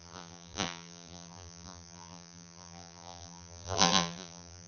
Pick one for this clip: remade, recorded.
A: remade